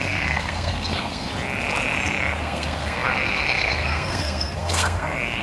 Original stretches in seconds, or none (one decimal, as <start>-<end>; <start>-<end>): 1.3-2.4